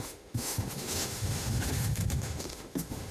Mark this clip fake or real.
fake